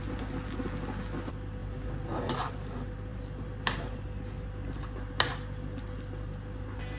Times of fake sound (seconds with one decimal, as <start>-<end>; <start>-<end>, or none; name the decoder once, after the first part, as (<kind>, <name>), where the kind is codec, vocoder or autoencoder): none

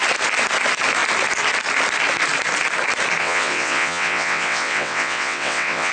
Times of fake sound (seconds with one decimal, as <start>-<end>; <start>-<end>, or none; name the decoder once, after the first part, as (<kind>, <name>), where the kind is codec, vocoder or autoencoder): 3.2-5.9 (vocoder, WaveNeXt)

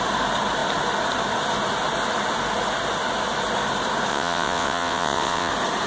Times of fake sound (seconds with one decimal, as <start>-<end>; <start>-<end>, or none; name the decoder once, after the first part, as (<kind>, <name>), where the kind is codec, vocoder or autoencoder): 4.1-5.5 (vocoder, WaveNeXt)

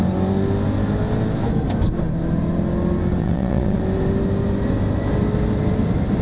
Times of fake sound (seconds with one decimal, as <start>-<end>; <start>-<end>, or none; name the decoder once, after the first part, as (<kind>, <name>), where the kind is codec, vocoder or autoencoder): 3.2-3.8 (vocoder, WaveNeXt)

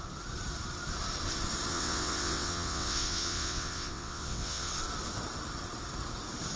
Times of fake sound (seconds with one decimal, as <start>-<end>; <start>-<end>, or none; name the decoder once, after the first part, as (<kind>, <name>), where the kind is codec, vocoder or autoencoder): 1.7-4.7 (vocoder, WaveNeXt)

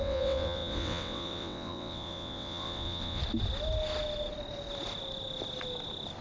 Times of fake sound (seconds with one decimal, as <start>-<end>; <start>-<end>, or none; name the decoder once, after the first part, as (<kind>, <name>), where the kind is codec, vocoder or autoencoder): 0.0-3.2 (vocoder, WaveNeXt)

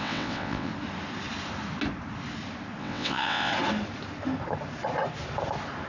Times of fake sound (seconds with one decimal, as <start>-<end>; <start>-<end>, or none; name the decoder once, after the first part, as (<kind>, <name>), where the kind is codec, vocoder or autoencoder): 0.0-0.7 (vocoder, WaveNeXt); 2.8-3.5

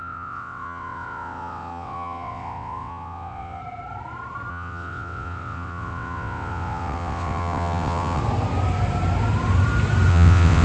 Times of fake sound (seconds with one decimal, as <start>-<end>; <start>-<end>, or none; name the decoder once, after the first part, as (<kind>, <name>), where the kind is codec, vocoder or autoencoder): 0.0-3.6 (vocoder, WaveNeXt); 4.5-8.2; 10.1-10.6